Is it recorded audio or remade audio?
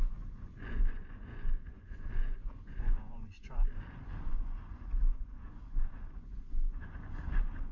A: remade